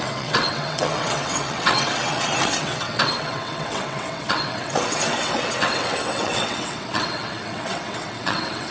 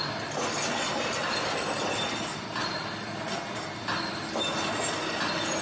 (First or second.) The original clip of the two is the second